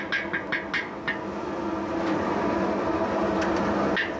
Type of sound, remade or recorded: recorded